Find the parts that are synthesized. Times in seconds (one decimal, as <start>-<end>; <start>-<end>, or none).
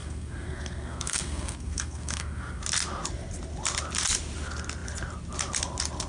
0.0-2.6